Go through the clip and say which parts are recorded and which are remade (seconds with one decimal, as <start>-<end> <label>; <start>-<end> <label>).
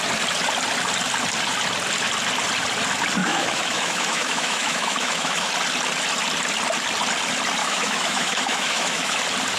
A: 0.0-3.2 recorded; 3.2-5.5 remade; 5.5-7.6 recorded; 7.6-9.2 remade; 9.2-9.6 recorded